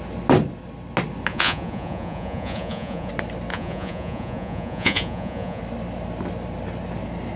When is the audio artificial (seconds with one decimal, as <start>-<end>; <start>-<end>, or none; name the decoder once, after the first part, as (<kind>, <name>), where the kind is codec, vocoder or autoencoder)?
1.3-3.1 (vocoder, Vocos); 3.5-5.6